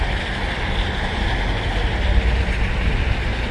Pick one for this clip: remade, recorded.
recorded